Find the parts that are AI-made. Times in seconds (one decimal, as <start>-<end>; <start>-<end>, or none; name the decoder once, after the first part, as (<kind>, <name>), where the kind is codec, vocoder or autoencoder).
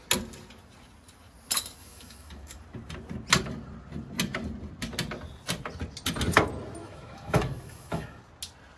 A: 1.8-2.6 (autoencoder, DAC-VAE); 6.8-8.2